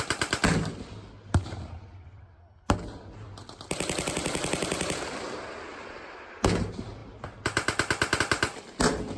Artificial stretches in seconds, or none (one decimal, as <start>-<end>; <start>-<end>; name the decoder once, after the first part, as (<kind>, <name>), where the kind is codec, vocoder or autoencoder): none